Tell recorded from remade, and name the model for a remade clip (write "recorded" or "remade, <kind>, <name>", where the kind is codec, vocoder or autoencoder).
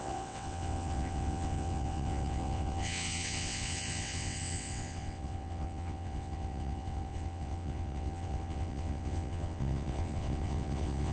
remade, vocoder, WaveNeXt